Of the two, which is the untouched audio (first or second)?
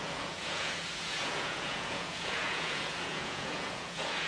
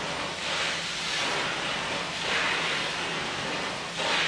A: second